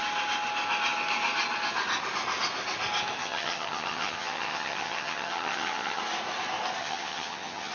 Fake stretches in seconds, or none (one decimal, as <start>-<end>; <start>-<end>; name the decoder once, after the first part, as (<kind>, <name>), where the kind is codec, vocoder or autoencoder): 3.2-6.0 (vocoder, HiFi-GAN); 6.8-7.7